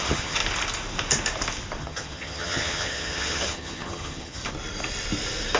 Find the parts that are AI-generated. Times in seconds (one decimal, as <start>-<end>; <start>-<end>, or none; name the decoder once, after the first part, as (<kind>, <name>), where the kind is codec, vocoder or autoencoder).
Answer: 0.0-0.4 (vocoder, HiFi-GAN); 1.8-4.4